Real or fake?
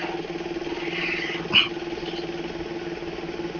real